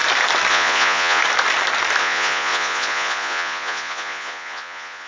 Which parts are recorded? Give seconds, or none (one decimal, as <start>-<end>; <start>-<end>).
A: 0.0-0.5; 1.2-2.0